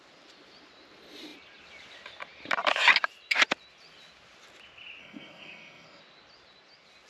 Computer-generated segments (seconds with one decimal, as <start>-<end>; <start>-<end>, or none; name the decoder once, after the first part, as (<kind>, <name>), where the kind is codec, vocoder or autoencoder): 5.0-6.0 (codec, SNAC)